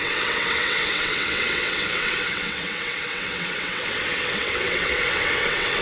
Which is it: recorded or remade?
remade